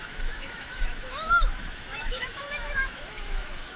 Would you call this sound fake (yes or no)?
yes